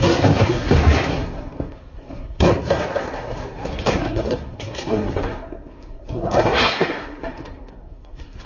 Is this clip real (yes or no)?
no